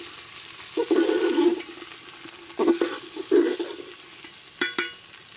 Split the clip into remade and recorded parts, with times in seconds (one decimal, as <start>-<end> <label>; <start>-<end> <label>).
0.0-5.4 recorded